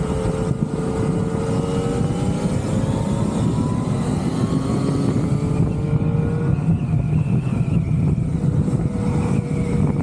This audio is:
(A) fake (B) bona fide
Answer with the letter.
B